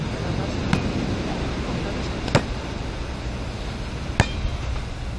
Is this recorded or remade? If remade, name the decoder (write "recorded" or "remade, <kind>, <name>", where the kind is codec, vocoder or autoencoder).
recorded